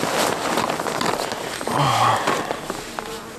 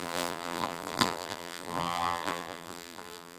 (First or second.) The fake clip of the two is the second